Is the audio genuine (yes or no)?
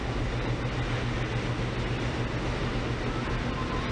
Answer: yes